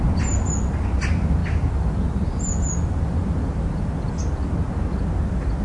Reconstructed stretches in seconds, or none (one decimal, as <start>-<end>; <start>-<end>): none